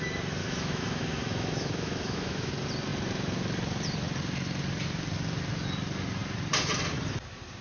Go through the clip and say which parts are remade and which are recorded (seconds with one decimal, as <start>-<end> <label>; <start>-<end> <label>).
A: 0.0-0.4 recorded; 0.4-2.5 remade; 2.5-7.6 recorded